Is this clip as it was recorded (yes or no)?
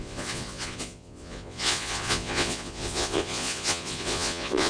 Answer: no